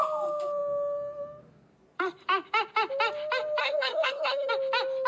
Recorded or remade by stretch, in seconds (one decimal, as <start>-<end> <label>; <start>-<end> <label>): 0.0-3.6 recorded; 3.6-4.5 remade; 4.5-5.1 recorded